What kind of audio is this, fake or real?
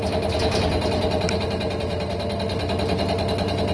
real